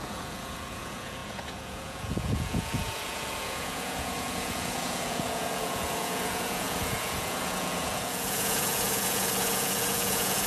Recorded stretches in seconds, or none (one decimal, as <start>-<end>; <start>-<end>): none